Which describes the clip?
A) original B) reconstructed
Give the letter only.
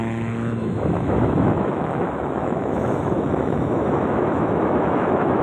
B